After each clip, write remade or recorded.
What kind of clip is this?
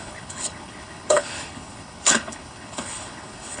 remade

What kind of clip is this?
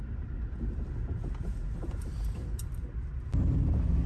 remade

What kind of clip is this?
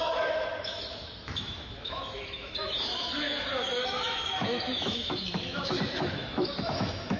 remade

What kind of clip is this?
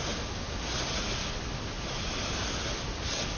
recorded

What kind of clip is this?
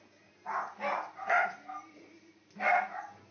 recorded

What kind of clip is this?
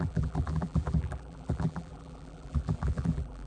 remade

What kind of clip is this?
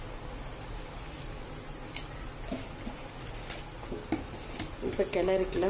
recorded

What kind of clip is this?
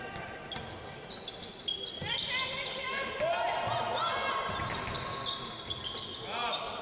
recorded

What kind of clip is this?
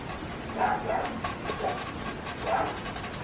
recorded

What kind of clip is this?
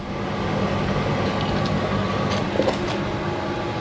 recorded